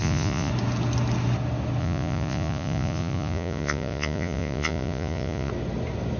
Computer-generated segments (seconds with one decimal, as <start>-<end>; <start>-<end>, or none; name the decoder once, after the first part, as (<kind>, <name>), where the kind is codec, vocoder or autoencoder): 0.0-0.5 (vocoder, Vocos); 1.8-5.5